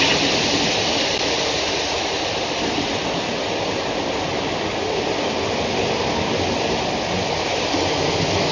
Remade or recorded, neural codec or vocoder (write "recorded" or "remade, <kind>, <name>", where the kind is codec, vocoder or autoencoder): recorded